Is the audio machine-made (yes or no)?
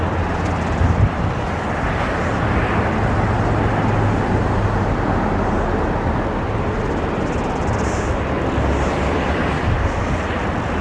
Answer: no